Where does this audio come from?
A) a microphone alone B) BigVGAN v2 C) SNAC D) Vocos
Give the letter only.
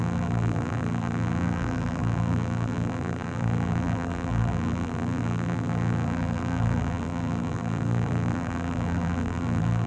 B